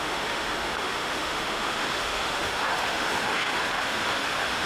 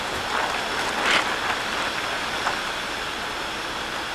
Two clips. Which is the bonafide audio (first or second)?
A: second